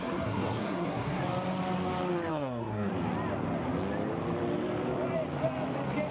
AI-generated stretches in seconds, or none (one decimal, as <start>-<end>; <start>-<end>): 0.0-1.2; 2.3-2.9